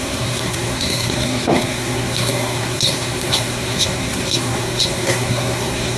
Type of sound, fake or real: fake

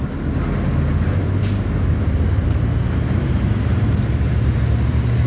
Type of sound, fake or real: real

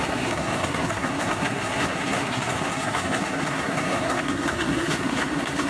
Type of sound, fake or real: fake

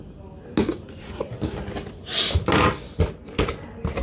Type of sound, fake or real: real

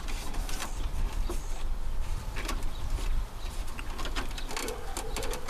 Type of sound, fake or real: real